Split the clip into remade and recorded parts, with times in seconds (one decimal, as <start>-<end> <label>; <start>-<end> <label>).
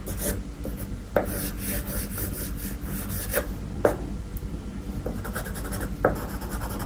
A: 0.0-6.9 recorded